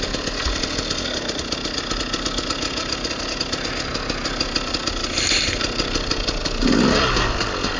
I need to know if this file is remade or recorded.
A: recorded